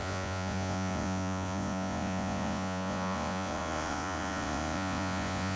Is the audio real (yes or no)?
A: no